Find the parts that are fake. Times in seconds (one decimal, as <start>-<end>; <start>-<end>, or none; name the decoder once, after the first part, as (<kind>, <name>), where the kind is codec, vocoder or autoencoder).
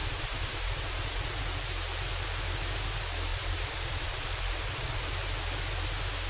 0.0-1.4 (vocoder, BigVGAN v2); 3.3-5.1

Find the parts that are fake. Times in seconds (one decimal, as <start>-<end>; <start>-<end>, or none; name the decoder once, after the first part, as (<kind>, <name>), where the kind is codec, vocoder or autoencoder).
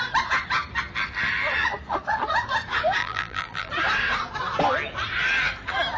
3.0-3.7 (vocoder, BigVGAN v2)